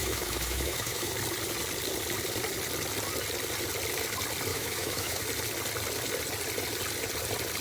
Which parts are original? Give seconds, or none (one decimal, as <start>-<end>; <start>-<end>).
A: 1.1-4.5; 5.2-7.6